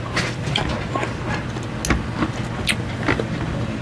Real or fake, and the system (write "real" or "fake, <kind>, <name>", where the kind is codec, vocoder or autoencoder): real